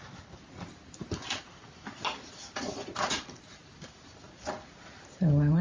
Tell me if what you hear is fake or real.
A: real